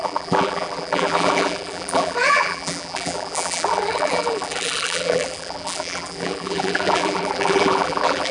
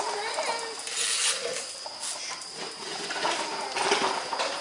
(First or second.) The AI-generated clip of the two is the first